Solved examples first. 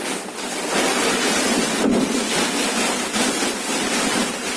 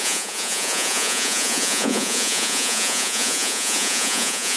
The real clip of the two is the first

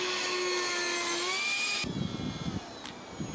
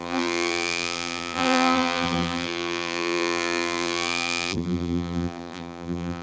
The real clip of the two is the first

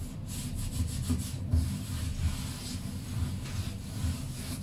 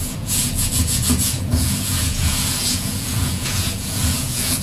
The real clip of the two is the first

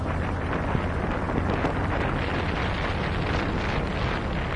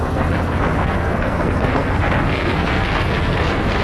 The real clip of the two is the first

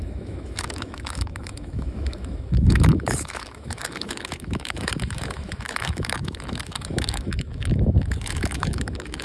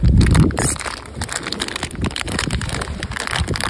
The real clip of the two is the second